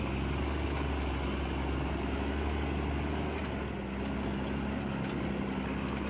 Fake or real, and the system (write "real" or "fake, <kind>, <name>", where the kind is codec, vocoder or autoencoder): real